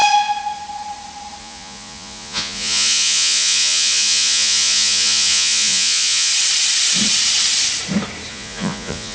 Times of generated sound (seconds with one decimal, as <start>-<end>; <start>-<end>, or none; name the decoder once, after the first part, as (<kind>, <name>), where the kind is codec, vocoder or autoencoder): 1.4-6.3 (vocoder, Vocos); 8.3-9.1